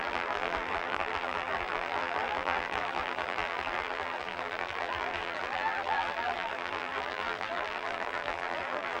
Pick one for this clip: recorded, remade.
remade